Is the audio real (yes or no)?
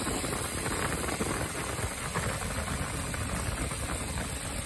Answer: yes